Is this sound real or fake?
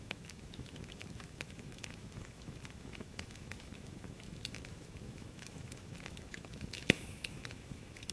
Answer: fake